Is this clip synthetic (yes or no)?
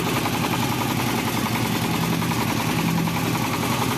no